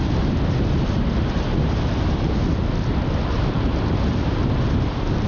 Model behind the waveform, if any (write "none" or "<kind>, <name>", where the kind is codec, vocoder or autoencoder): none